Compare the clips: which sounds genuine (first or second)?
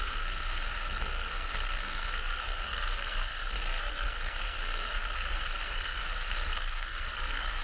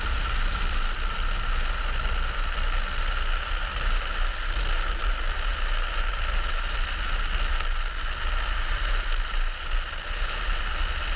second